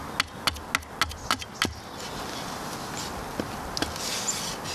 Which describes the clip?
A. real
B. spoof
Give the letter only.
A